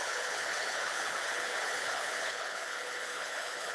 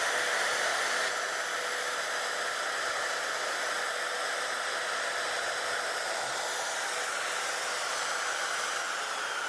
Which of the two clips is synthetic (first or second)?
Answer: first